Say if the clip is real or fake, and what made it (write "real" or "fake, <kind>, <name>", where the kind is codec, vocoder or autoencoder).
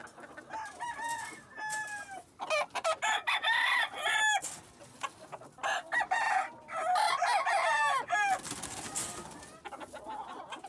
real